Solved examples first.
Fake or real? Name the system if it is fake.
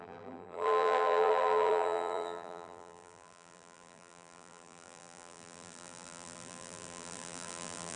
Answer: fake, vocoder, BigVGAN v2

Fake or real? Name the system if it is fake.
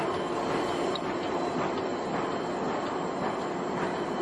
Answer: real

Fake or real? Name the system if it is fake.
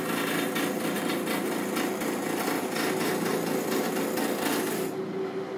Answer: real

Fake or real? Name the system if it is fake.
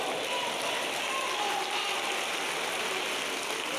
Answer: real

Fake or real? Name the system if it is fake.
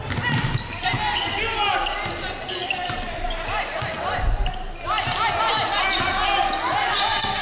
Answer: real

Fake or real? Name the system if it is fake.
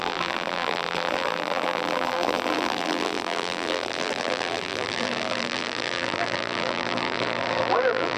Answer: fake, vocoder, BigVGAN v2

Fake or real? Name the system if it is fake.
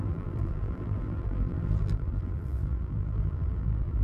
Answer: fake, vocoder, BigVGAN v2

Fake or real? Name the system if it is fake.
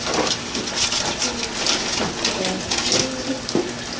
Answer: real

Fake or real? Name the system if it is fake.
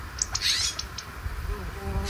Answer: real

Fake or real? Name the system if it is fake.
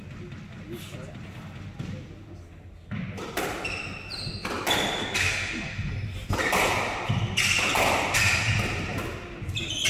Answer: real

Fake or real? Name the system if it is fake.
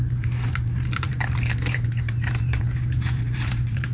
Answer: fake, vocoder, BigVGAN v2